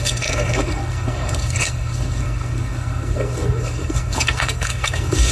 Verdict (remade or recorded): remade